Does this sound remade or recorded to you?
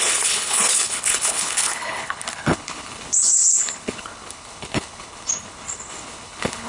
remade